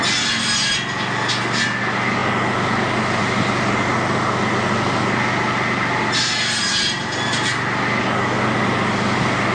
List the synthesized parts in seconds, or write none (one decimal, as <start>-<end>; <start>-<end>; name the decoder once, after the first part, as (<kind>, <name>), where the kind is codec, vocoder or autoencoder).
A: none